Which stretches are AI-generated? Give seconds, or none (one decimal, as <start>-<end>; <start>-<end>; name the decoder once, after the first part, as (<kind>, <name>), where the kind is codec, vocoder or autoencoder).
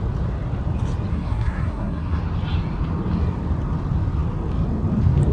1.1-2.2 (codec, SNAC)